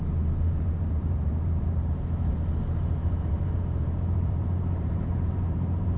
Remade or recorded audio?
remade